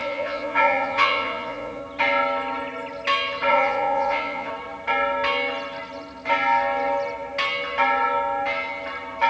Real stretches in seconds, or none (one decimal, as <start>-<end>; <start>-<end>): 1.8-3.5; 4.5-9.3